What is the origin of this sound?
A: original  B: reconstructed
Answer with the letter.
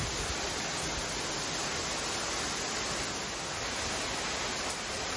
A